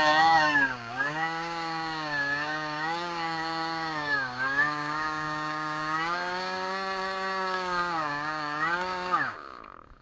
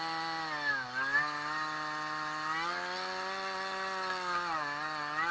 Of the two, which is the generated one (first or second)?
first